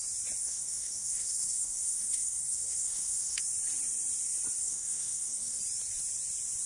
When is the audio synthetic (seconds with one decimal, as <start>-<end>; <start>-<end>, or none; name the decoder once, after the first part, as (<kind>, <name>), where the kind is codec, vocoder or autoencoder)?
0.4-3.4 (codec, SNAC); 4.6-5.6